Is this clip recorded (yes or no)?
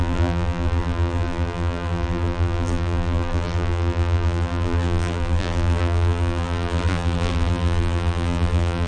no